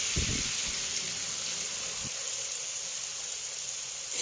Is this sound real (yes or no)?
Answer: yes